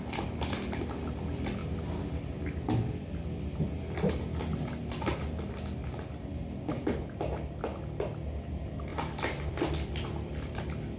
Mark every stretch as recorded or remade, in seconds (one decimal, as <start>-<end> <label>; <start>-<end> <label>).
0.0-6.4 recorded; 6.4-7.0 remade; 7.0-8.9 recorded; 8.9-10.6 remade; 10.6-11.0 recorded